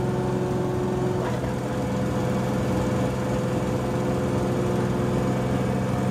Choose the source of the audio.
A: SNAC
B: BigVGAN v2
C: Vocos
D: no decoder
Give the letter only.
D